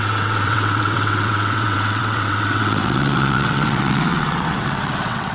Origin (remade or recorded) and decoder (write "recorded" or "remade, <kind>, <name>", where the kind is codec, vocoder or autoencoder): remade, vocoder, WaveNeXt